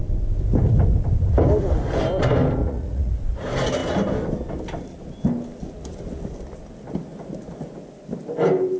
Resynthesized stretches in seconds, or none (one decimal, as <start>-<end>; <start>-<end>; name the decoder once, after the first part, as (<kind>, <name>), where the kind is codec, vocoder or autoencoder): 2.6-3.1 (vocoder, Vocos)